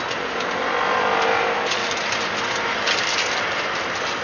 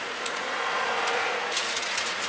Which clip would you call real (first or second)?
first